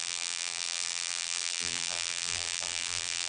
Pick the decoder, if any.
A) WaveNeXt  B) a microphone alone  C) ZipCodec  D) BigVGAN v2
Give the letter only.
D